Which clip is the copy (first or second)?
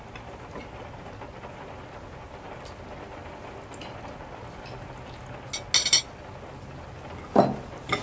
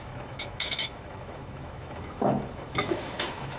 second